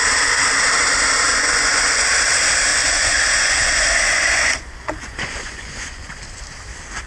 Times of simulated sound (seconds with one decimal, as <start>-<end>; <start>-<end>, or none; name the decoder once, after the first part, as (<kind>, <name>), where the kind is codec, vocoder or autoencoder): 1.3-2.1 (vocoder, Vocos); 2.7-6.2